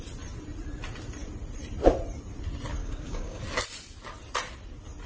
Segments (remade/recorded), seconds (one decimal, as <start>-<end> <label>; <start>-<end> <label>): 0.0-2.8 recorded; 2.8-3.4 remade; 3.4-5.1 recorded